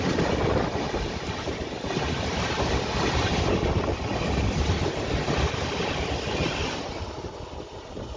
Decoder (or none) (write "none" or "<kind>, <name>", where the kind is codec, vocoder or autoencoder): none